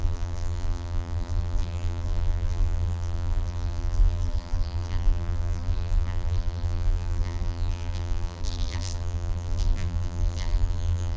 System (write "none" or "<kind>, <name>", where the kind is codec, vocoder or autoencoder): vocoder, BigVGAN v2